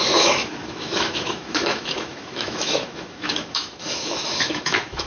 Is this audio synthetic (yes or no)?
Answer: yes